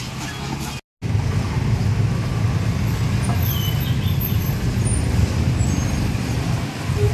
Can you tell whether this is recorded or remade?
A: recorded